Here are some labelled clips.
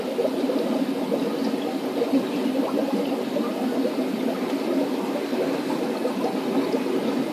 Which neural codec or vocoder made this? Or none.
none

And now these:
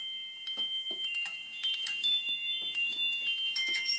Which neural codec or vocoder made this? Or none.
codec, DAC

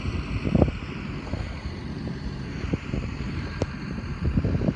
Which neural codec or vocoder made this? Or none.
vocoder, BigVGAN v2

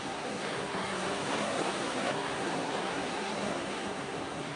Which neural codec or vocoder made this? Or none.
codec, SNAC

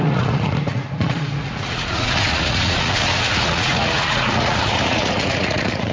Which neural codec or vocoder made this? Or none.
vocoder, Vocos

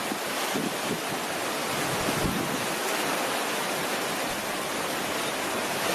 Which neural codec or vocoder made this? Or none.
none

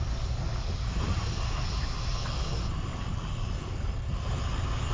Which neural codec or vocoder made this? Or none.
none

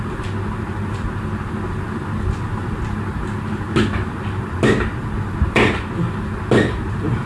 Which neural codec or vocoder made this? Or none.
none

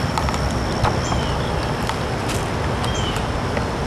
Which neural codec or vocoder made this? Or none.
none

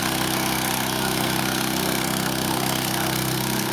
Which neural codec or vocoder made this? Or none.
codec, SNAC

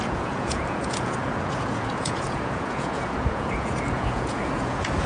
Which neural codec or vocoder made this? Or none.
vocoder, Vocos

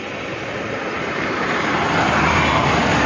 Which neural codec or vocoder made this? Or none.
vocoder, BigVGAN v2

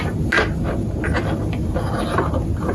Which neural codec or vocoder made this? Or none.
none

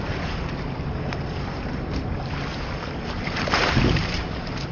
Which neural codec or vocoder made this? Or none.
vocoder, BigVGAN v2